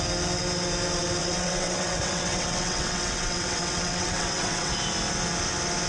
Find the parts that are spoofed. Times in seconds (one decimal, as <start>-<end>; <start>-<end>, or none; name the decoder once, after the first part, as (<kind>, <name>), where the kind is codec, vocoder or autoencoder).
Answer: 1.2-4.7 (vocoder, WaveNeXt)